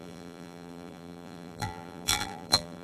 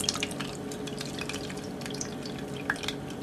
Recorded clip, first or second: second